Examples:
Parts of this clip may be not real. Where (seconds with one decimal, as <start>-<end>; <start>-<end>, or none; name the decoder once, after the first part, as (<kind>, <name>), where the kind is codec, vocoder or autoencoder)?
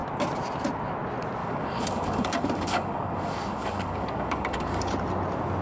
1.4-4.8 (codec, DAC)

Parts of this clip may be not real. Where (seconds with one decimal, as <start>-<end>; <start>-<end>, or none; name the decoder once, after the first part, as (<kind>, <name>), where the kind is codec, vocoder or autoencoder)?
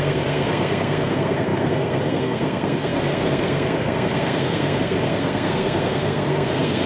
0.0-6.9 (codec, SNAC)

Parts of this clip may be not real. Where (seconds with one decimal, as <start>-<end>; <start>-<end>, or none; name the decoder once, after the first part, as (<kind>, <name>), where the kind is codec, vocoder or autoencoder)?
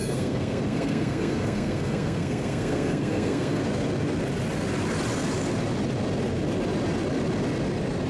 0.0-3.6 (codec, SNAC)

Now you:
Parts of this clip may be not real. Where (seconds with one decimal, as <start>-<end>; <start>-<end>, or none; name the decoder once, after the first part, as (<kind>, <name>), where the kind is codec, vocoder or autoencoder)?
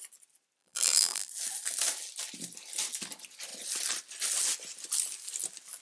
0.6-1.3 (vocoder, BigVGAN v2)